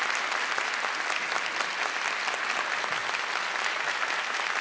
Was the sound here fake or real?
real